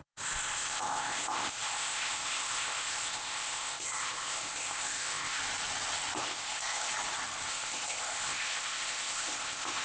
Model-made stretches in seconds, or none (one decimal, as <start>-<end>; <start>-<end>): 0.0-5.4; 6.2-6.9; 7.5-9.8